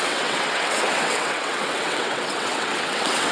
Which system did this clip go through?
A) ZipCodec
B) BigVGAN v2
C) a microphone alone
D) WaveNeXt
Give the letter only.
D